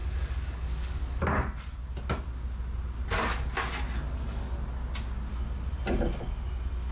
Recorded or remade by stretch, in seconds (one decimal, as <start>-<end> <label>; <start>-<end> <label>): 0.0-1.2 remade; 1.2-6.9 recorded